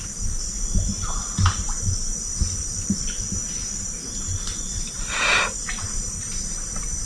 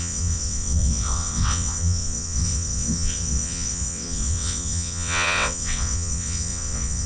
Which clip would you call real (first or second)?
first